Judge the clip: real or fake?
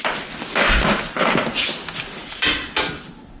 real